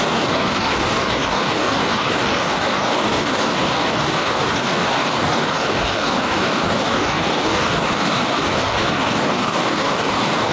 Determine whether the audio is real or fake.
fake